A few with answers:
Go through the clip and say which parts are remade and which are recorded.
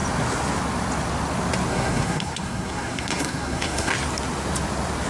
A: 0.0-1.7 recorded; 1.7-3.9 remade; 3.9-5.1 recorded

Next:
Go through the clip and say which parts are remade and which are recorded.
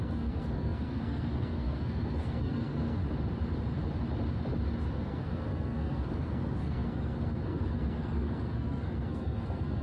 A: 0.0-3.0 remade; 3.0-4.9 recorded; 4.9-9.8 remade